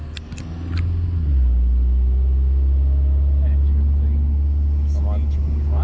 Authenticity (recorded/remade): recorded